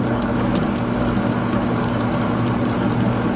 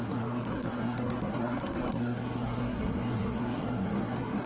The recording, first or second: first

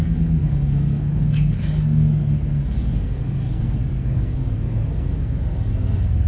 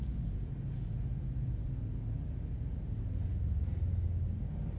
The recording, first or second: second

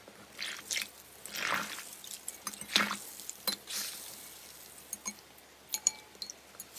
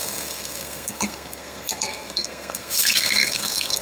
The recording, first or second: first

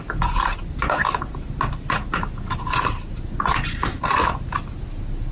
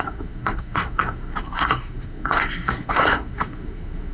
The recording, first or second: first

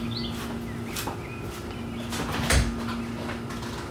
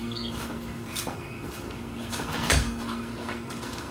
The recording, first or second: first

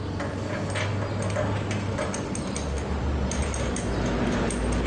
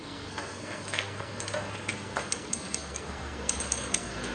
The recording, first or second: first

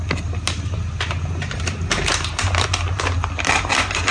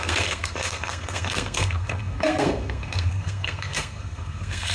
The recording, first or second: first